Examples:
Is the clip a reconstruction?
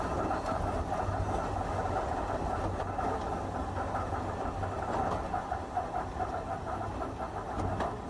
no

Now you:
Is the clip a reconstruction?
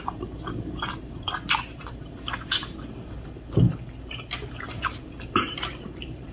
yes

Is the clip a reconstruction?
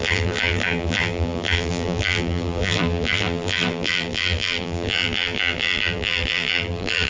yes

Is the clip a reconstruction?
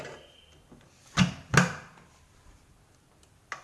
no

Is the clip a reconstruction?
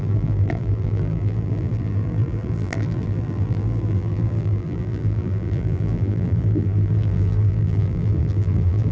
yes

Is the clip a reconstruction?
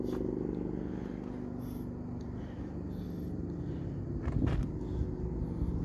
no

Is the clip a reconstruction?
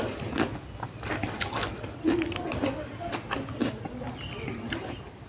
no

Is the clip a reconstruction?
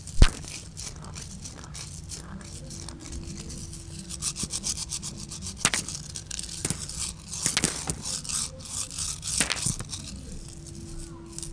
no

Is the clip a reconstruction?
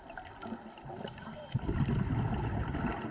yes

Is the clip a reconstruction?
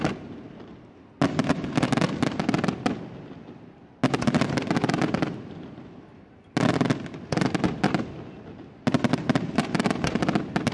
no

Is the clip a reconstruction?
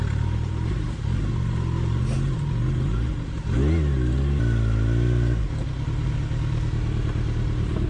no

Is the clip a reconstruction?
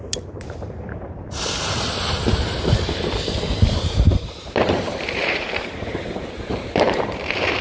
yes